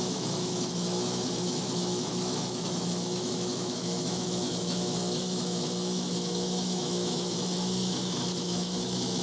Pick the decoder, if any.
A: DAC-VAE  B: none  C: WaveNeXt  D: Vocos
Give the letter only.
A